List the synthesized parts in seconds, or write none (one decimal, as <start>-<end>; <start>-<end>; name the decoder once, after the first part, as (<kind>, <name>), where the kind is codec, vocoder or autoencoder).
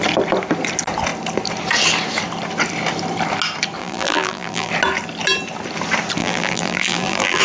3.8-4.7 (vocoder, BigVGAN v2); 6.2-7.4